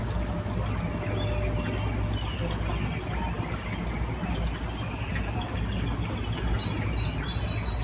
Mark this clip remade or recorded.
recorded